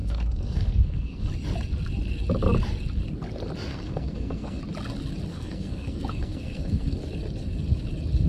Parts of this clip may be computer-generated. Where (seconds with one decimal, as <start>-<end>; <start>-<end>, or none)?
0.0-1.3; 3.7-4.6; 5.3-7.0